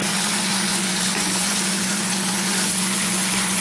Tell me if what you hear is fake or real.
fake